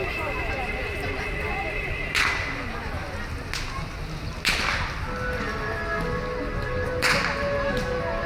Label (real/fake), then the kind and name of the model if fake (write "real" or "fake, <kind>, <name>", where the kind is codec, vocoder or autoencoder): real